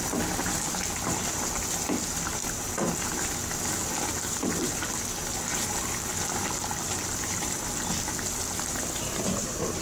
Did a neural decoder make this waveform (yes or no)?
yes